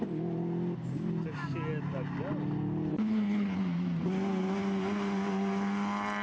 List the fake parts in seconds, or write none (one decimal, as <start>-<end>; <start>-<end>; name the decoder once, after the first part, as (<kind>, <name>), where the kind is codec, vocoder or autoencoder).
2.9-3.6 (codec, HILCodec)